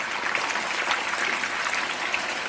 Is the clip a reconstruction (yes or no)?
no